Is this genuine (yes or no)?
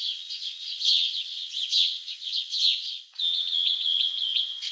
no